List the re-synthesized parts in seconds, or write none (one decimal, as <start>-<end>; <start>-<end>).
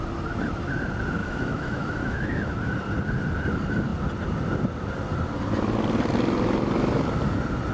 1.2-2.7